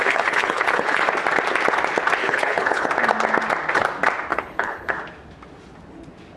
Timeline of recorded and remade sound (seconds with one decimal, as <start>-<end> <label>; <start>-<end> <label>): 0.0-1.0 remade; 1.0-2.2 recorded; 2.2-2.9 remade; 2.9-4.3 recorded; 4.3-4.9 remade; 4.9-6.4 recorded

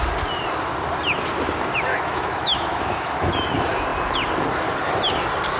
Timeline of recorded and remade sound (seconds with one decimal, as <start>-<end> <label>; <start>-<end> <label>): 0.0-1.9 recorded; 1.9-3.3 remade; 3.3-5.6 recorded

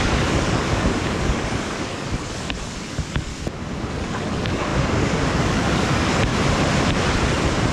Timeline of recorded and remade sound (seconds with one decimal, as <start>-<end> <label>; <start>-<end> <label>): 0.0-3.3 remade; 3.3-3.9 recorded; 3.9-6.3 remade; 6.3-7.7 recorded

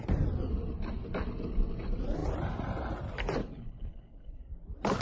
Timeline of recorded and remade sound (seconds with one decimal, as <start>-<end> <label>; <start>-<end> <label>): 0.0-3.4 recorded; 3.4-4.4 remade; 4.4-5.0 recorded